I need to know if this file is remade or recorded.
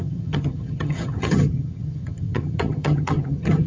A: remade